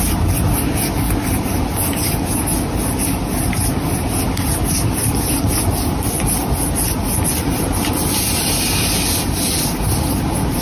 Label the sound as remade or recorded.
recorded